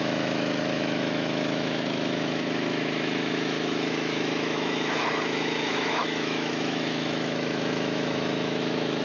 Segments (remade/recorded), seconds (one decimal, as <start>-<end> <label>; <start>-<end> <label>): 0.0-9.0 remade